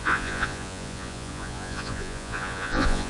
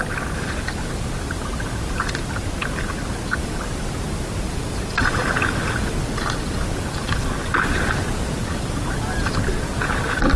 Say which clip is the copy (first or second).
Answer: first